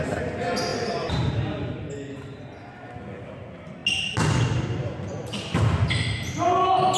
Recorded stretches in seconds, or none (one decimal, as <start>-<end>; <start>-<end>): 0.0-0.7; 1.9-7.0